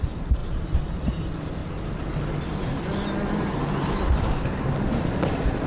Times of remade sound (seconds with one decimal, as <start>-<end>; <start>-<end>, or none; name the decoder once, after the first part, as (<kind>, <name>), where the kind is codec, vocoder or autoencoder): 0.4-1.1 (vocoder, BigVGAN v2)